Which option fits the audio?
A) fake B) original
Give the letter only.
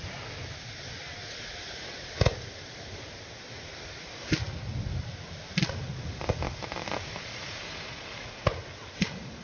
B